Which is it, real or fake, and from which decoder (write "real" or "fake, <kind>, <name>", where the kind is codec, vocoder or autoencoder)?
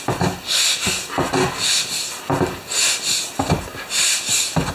real